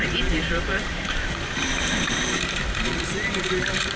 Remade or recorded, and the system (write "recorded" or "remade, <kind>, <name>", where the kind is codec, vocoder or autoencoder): remade, vocoder, BigVGAN v2